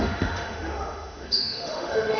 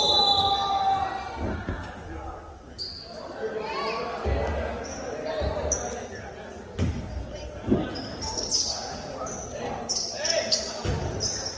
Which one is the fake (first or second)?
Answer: first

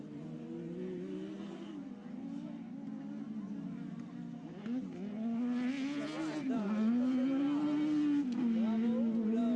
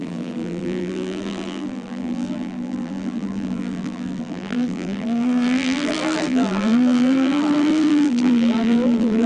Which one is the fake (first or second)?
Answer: second